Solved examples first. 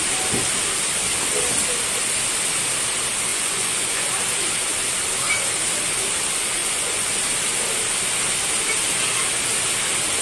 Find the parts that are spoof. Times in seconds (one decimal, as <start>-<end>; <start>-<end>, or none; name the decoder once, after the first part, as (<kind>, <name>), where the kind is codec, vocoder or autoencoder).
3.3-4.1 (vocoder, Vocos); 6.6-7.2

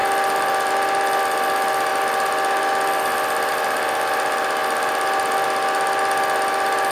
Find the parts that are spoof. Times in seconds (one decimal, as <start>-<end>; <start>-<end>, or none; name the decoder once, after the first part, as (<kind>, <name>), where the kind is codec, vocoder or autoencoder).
none

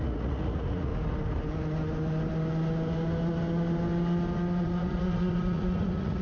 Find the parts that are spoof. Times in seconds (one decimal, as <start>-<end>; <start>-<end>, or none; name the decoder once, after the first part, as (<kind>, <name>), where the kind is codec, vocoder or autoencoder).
0.0-0.9 (vocoder, Vocos); 4.6-6.2

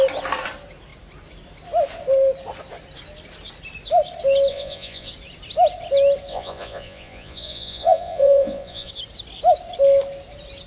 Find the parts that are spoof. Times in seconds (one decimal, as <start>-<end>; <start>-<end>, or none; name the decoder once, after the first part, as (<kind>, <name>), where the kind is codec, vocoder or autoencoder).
4.5-5.1 (vocoder, Vocos); 6.3-8.9

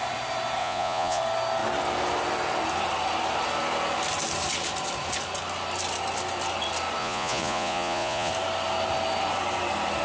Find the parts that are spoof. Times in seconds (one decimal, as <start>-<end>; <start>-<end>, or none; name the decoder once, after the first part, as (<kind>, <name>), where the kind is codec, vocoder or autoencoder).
0.6-1.2 (vocoder, Vocos); 7.0-8.3

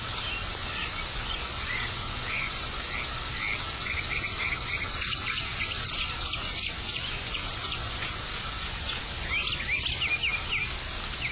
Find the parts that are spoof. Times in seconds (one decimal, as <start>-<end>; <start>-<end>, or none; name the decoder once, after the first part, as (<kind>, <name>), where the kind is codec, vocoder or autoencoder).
0.4-2.9 (vocoder, Vocos); 3.8-9.0